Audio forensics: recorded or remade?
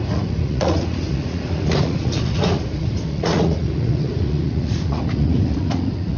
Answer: remade